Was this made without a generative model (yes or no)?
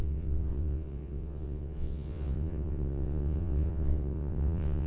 no